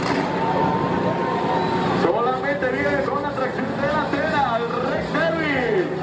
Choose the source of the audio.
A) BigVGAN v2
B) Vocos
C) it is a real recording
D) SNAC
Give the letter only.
C